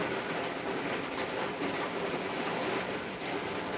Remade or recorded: recorded